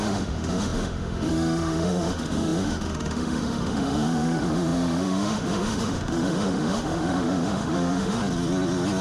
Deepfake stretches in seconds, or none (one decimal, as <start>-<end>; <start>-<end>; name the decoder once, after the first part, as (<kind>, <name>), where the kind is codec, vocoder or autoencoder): 0.0-8.2 (autoencoder, DAC-VAE)